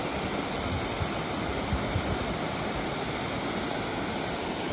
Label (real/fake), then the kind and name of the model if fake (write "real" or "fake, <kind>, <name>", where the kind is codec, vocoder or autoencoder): real